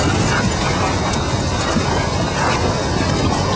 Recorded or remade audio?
recorded